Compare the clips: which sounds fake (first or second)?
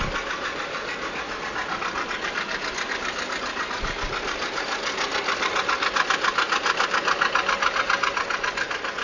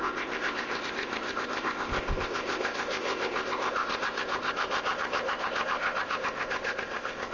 second